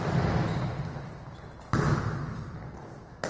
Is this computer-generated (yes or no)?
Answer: no